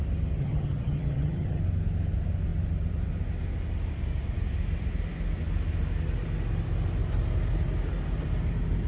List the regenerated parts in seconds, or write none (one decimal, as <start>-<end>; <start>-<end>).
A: 0.4-1.6